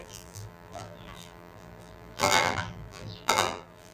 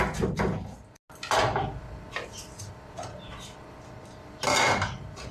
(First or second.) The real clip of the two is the second